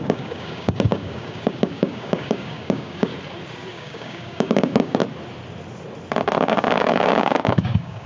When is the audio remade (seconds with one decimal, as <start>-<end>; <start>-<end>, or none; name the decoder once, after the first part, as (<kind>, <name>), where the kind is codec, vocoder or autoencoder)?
0.0-3.1 (codec, DAC); 3.7-5.0; 6.4-8.1